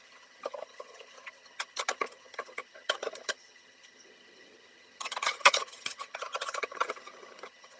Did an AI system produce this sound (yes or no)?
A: yes